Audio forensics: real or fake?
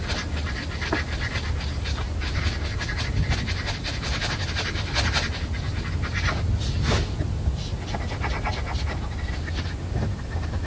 real